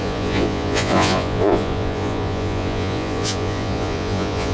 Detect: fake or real fake